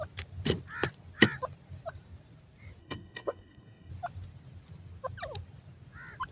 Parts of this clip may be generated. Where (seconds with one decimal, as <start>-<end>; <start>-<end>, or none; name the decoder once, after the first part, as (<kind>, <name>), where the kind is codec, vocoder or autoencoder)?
2.8-3.9 (codec, SNAC)